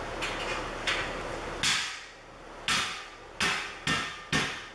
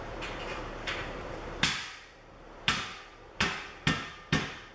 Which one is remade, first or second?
second